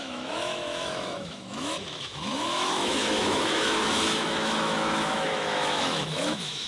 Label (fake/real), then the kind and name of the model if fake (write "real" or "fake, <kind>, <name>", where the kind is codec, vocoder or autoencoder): fake, autoencoder, DAC-VAE